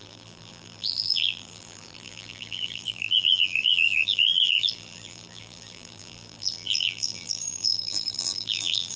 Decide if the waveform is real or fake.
fake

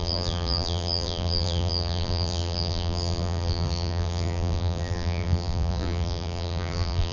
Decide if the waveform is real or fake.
fake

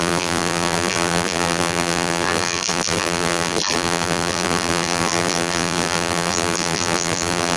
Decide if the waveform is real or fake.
fake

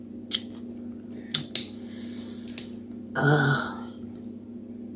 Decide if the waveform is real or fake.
real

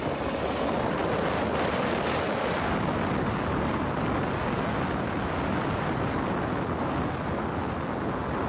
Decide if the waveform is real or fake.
real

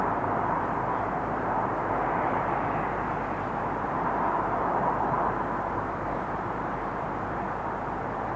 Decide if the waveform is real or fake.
fake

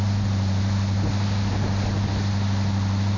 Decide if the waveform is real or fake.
real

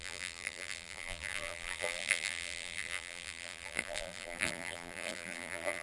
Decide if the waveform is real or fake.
fake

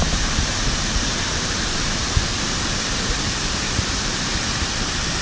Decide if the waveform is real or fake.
fake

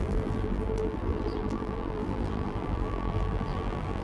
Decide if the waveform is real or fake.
fake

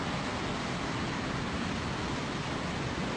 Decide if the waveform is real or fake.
real